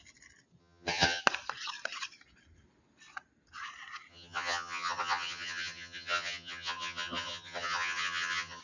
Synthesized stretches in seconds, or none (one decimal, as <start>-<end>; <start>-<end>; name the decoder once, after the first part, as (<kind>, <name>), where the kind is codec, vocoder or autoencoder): 0.6-1.2 (vocoder, HiFi-GAN); 4.1-8.6